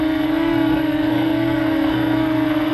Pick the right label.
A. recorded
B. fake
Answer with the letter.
B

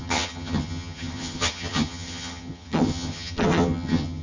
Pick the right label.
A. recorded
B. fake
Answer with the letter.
B